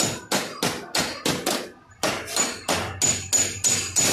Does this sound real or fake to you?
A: real